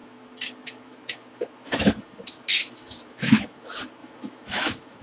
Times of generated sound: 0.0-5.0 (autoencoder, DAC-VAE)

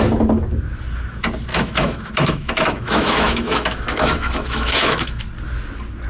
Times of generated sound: 1.5-5.2 (autoencoder, DAC-VAE)

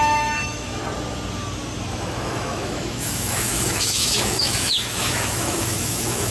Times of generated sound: 0.0-0.8 (autoencoder, DAC-VAE); 1.9-6.3